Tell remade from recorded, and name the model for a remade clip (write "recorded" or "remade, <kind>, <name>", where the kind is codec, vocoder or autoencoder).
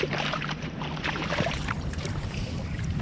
remade, vocoder, BigVGAN v2